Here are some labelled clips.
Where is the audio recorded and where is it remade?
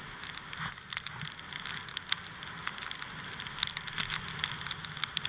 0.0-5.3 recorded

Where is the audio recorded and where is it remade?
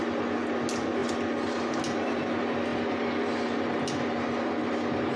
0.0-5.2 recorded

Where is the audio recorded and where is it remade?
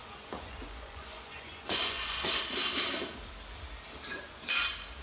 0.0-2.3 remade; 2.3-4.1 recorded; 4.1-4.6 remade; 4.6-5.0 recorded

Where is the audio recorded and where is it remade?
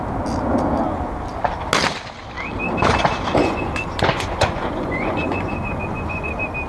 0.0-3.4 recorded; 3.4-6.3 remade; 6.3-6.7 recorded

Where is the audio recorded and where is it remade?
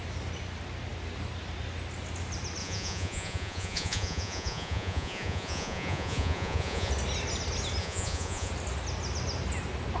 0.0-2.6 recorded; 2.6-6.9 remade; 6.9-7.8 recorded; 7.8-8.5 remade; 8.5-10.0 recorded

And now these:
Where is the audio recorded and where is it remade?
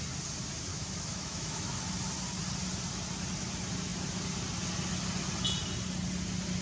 0.0-0.7 recorded; 0.7-1.8 remade; 1.8-6.6 recorded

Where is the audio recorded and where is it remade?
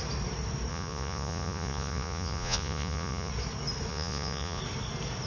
0.0-0.7 recorded; 0.7-3.3 remade; 3.3-3.9 recorded; 3.9-4.6 remade; 4.6-5.3 recorded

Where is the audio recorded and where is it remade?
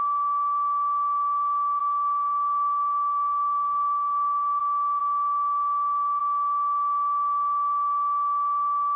0.0-1.8 recorded; 1.8-4.6 remade; 4.6-9.0 recorded